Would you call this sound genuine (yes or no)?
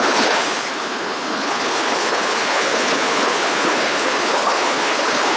no